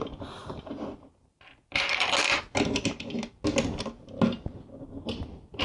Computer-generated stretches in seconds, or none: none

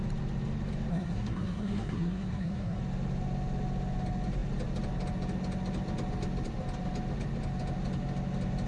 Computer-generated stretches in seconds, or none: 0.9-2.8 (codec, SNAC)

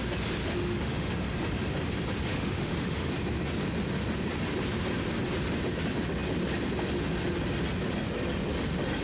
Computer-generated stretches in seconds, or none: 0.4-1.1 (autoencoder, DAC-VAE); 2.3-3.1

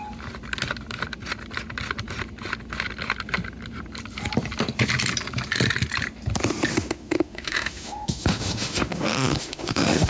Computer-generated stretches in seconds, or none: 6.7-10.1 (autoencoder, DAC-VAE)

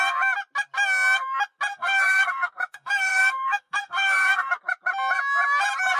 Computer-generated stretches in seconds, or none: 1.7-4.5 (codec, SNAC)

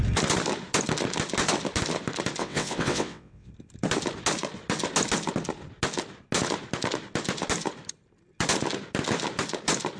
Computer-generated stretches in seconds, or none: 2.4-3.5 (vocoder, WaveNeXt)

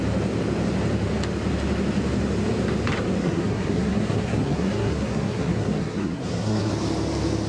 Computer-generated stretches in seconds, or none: 3.2-6.7 (codec, SNAC)

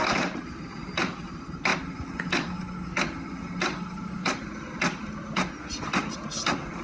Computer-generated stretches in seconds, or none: none